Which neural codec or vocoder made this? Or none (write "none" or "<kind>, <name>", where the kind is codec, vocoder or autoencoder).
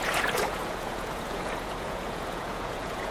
vocoder, Vocos